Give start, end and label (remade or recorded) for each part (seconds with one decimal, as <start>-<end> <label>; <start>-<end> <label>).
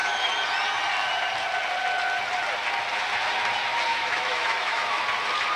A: 0.0-3.9 recorded; 3.9-5.0 remade; 5.0-5.6 recorded